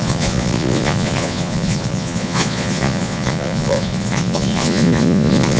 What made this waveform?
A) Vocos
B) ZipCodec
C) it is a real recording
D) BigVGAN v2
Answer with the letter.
A